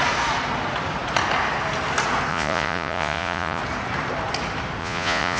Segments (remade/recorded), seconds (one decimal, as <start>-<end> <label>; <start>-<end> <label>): 0.0-2.3 recorded; 2.3-3.6 remade; 3.6-4.8 recorded; 4.8-5.4 remade